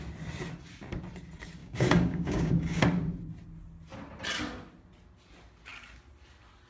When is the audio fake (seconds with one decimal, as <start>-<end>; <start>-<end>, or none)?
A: 1.6-2.8